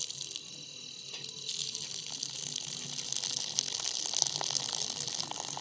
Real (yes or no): yes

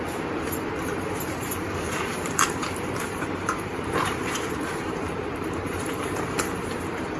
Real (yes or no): no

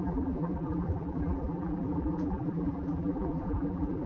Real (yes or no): no